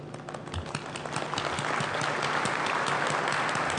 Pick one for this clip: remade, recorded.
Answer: recorded